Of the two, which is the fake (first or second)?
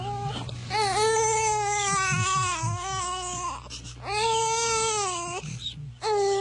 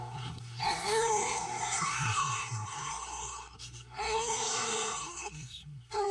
second